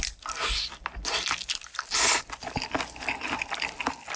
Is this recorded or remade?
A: recorded